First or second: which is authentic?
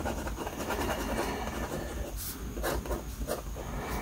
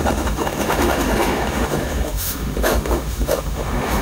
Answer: first